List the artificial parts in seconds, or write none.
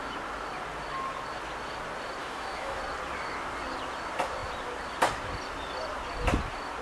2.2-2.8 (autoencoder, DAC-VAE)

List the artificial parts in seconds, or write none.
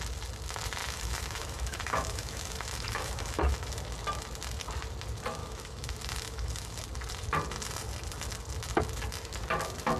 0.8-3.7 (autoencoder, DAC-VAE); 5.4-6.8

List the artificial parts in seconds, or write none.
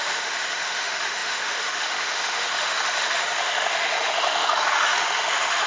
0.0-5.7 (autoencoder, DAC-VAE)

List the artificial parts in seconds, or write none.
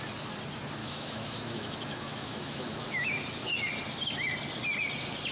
0.8-3.7 (autoencoder, DAC-VAE)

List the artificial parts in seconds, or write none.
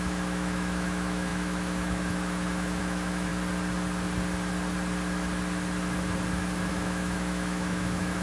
0.0-3.3 (autoencoder, DAC-VAE); 6.7-8.2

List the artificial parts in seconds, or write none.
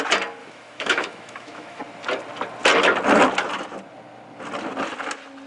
0.4-1.8 (autoencoder, DAC-VAE)